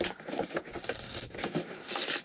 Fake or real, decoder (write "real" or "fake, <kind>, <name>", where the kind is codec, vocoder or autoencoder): fake, vocoder, BigVGAN v2